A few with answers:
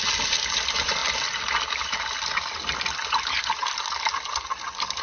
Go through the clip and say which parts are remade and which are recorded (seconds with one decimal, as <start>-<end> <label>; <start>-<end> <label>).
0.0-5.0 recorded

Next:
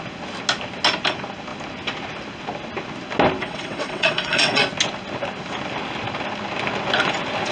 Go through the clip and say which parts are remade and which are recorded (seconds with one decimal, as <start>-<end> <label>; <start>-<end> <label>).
0.0-3.4 recorded; 3.4-4.6 remade; 4.6-7.5 recorded

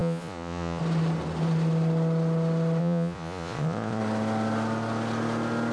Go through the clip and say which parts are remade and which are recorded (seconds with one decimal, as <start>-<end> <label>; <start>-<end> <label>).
0.0-0.8 remade; 0.8-2.8 recorded; 2.8-4.0 remade; 4.0-5.7 recorded